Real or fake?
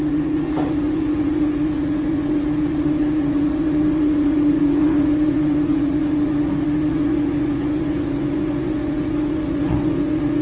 fake